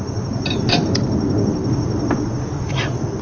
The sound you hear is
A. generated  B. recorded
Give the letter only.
B